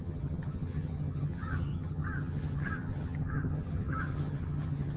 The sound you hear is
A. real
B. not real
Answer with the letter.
B